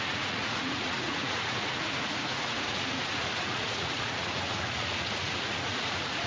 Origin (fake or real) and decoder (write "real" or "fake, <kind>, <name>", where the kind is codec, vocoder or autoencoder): fake, vocoder, Vocos